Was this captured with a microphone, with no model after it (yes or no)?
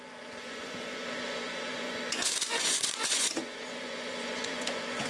no